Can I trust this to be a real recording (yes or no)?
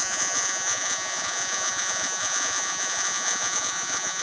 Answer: no